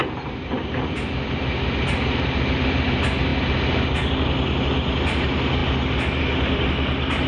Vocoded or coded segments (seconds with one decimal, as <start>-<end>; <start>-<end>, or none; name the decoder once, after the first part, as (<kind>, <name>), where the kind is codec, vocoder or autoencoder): none